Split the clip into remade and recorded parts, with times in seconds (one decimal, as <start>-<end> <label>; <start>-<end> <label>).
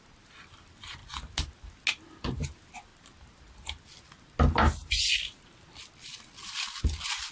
0.0-7.3 recorded